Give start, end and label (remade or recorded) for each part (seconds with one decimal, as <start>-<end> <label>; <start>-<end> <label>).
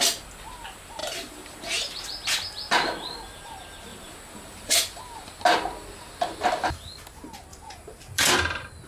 0.0-1.0 recorded; 1.0-2.0 remade; 2.0-3.9 recorded; 3.9-5.0 remade; 5.0-7.5 recorded; 7.5-8.3 remade; 8.3-8.9 recorded